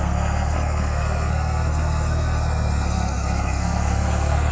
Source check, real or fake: fake